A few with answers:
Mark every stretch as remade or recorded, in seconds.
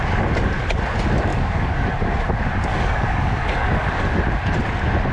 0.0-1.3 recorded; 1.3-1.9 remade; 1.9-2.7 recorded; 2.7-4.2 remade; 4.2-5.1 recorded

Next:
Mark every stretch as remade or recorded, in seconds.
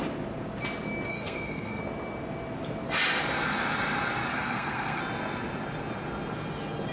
0.0-1.1 recorded; 1.1-1.8 remade; 1.8-4.3 recorded; 4.3-5.0 remade; 5.0-6.9 recorded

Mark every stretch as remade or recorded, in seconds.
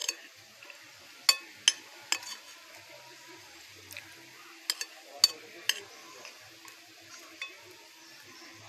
0.0-1.0 remade; 1.0-8.7 recorded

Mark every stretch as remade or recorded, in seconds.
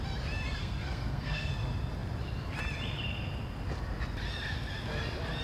0.0-0.6 recorded; 0.6-1.5 remade; 1.5-5.4 recorded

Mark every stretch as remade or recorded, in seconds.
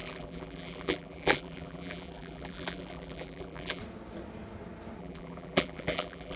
0.0-3.8 remade; 3.8-5.0 recorded; 5.0-6.4 remade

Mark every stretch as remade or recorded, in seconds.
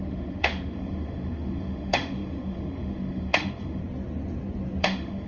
0.0-3.8 remade; 3.8-4.8 recorded; 4.8-5.3 remade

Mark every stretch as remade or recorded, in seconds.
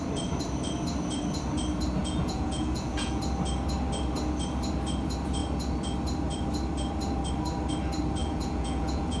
0.0-2.0 recorded; 2.0-3.2 remade; 3.2-8.2 recorded; 8.2-9.2 remade